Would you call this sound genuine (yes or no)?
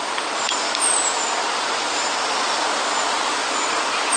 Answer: yes